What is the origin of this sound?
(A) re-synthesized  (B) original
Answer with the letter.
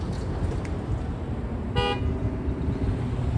B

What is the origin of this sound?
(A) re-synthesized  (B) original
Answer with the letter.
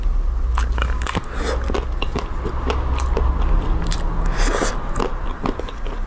B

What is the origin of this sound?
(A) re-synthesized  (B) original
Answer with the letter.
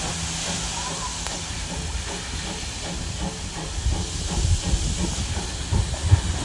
B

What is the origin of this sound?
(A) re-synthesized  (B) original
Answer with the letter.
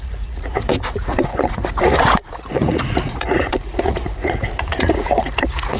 A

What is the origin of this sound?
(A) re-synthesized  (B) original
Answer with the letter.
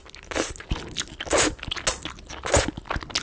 B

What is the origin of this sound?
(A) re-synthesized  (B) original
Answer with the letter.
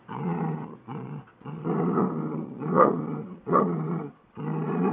A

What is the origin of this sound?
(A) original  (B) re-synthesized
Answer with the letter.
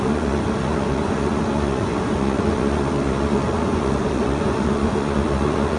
B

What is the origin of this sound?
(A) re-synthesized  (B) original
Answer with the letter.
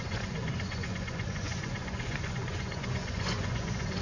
A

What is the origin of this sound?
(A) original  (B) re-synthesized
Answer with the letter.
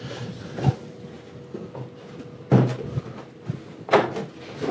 A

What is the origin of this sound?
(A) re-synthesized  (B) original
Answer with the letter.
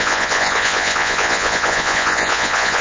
A